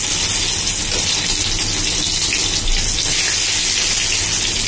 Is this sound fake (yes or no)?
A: no